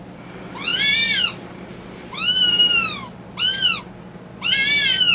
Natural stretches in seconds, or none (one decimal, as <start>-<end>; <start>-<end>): 0.0-5.1

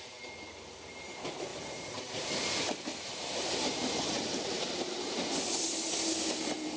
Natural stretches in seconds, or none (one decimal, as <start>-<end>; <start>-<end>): 0.0-1.5; 4.6-6.8